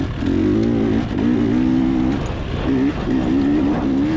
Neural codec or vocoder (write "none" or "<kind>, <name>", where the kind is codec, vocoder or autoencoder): none